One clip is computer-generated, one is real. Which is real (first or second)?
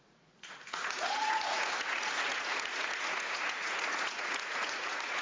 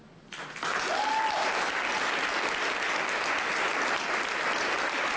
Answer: second